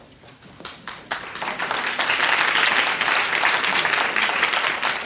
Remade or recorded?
recorded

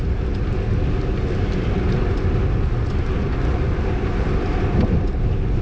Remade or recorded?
recorded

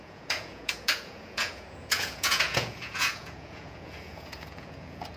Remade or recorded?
remade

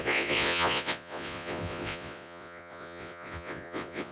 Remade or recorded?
remade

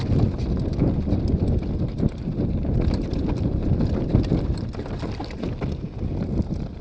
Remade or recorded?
recorded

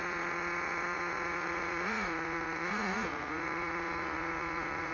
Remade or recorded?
remade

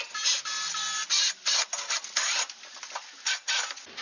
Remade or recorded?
recorded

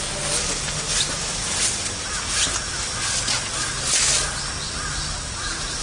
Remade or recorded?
recorded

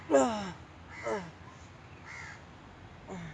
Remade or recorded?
recorded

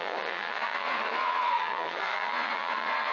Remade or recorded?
remade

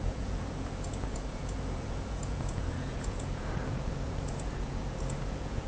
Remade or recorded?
remade